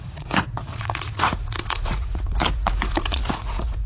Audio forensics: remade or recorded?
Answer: remade